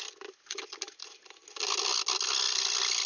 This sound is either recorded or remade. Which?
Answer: recorded